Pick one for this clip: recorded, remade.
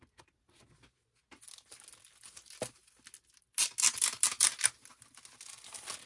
recorded